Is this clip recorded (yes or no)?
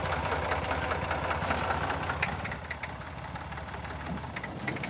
yes